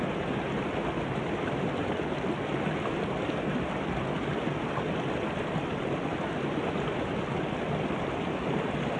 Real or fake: real